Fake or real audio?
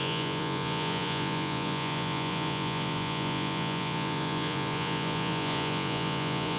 fake